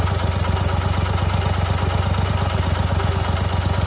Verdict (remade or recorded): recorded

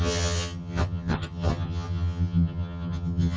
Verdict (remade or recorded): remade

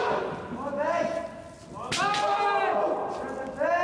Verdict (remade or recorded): recorded